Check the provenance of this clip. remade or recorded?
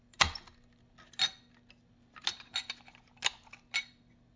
recorded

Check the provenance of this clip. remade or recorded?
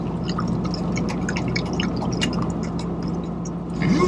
recorded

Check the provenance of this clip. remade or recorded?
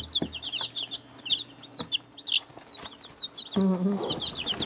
recorded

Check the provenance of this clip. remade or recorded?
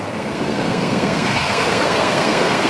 remade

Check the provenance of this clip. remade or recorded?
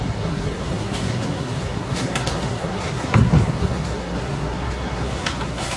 remade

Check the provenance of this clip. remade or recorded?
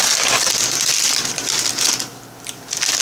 recorded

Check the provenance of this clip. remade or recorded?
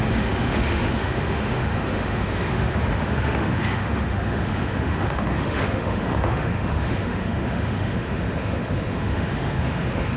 remade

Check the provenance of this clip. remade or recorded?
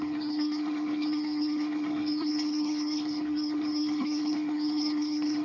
remade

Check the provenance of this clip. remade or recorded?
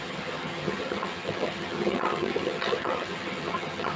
remade